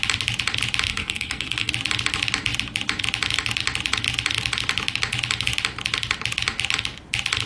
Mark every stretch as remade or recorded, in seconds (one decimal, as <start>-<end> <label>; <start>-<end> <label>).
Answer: 0.0-0.9 recorded; 0.9-1.7 remade; 1.7-7.5 recorded